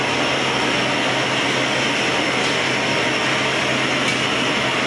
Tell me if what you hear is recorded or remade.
recorded